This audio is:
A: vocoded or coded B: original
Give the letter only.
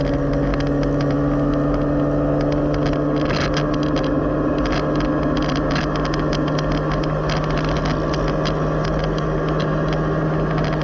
B